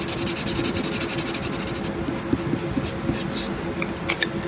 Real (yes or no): yes